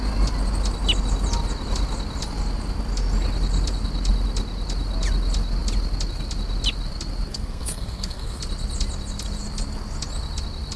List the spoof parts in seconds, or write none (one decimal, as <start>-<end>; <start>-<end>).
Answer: 7.3-8.4